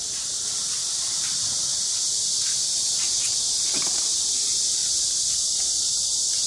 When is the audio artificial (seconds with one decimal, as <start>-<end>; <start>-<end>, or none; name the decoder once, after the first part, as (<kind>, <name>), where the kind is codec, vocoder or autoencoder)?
0.0-6.5 (vocoder, BigVGAN v2)